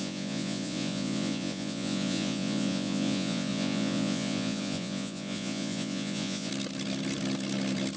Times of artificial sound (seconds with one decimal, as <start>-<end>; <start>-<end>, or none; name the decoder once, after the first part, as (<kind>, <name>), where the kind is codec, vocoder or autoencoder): 0.0-6.5 (vocoder, Vocos)

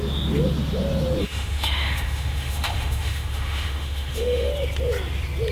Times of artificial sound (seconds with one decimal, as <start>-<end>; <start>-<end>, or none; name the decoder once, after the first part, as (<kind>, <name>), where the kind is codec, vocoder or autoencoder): 1.2-4.5 (autoencoder, DAC-VAE)

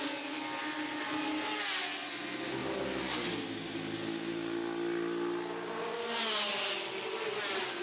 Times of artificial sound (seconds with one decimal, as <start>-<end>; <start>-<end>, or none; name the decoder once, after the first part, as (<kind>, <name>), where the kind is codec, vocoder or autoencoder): none

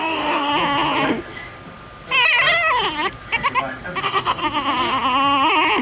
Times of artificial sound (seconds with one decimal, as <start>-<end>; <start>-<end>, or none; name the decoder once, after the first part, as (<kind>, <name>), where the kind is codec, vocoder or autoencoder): 0.0-0.5 (codec, DAC); 4.0-4.4